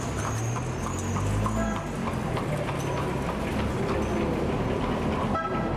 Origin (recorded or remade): recorded